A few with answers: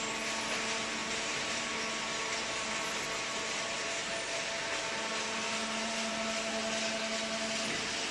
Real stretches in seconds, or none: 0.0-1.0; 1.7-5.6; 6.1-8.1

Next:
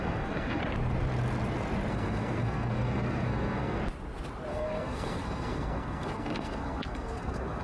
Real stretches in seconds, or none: 0.6-1.9; 3.8-4.5

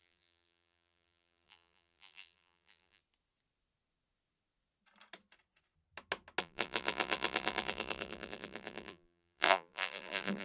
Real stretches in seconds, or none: 3.0-6.4

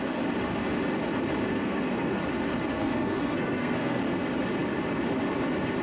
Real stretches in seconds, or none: 0.0-1.5; 2.2-2.7; 4.0-5.8

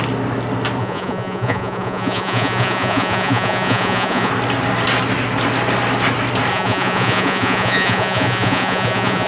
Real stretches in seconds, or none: 0.0-0.8; 4.3-6.5